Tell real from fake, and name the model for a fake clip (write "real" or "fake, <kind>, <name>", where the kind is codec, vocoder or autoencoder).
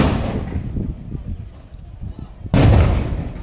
real